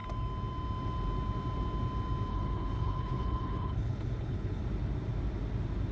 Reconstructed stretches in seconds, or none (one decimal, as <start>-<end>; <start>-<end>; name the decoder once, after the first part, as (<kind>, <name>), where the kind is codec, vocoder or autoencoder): 2.3-4.6 (codec, HILCodec)